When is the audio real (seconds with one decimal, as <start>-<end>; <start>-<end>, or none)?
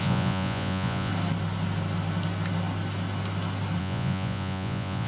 1.1-3.8